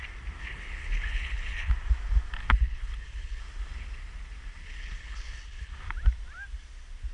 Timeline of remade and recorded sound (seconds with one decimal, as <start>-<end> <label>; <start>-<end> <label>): 0.0-0.4 recorded; 0.4-1.7 remade; 1.7-2.4 recorded; 2.4-3.4 remade; 3.4-4.6 recorded; 4.6-5.7 remade; 5.7-7.1 recorded

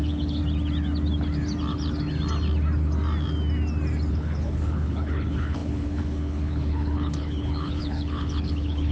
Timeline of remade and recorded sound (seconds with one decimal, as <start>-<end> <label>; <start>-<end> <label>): 0.0-0.4 remade; 0.4-4.1 recorded; 4.1-8.9 remade

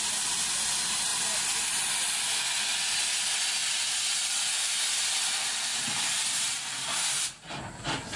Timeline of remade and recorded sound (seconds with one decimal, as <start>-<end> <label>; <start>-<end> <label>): 0.0-8.2 recorded

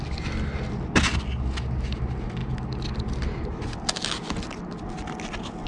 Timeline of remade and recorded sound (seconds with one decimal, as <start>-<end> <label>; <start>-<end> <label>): 0.0-5.7 recorded

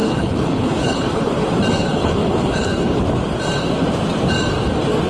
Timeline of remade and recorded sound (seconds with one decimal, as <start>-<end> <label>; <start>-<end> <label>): 0.0-1.3 remade; 1.3-1.8 recorded; 1.8-3.0 remade; 3.0-5.1 recorded

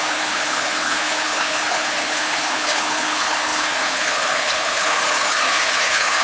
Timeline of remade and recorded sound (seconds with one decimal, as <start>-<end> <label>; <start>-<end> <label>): 0.0-6.2 remade

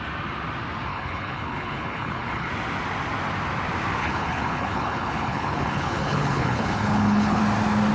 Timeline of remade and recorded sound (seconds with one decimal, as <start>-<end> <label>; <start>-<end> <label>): 0.0-0.9 recorded; 0.9-2.5 remade; 2.5-4.0 recorded; 4.0-7.4 remade; 7.4-7.9 recorded